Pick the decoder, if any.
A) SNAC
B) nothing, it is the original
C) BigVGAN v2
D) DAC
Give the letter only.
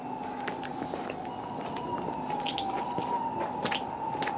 B